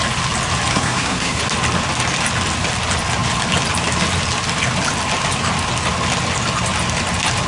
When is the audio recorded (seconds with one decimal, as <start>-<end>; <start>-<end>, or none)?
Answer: 0.0-0.7; 1.4-7.5